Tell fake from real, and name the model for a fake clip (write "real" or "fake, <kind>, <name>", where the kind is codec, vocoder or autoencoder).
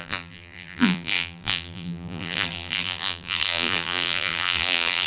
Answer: fake, vocoder, BigVGAN v2